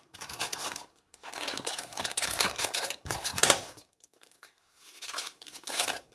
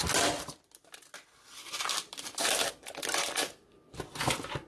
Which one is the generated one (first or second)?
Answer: first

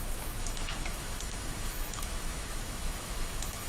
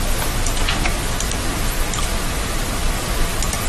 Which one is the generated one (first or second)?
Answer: first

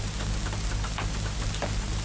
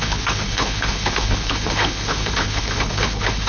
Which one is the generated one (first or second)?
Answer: second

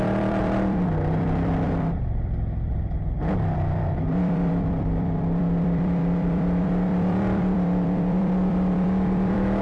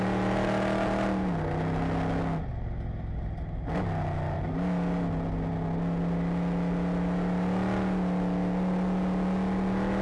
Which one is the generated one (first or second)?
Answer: first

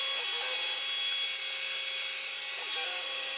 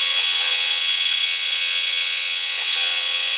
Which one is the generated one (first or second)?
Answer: second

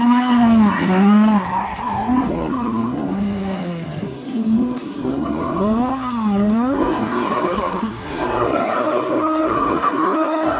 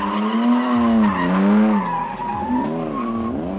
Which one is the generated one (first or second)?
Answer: first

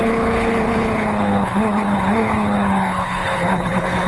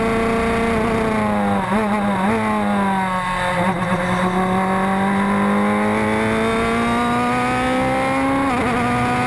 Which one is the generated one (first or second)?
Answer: first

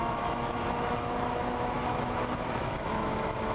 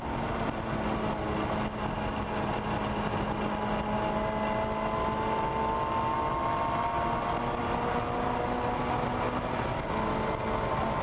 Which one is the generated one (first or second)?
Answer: first